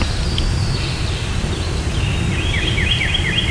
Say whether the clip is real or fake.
real